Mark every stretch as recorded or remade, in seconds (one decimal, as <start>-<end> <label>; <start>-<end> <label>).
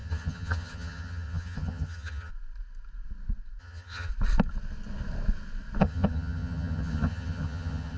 0.0-2.3 remade; 2.3-3.6 recorded; 3.6-4.1 remade; 4.1-5.8 recorded; 5.8-8.0 remade